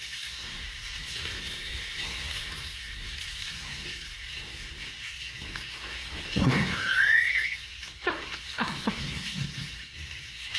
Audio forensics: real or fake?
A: fake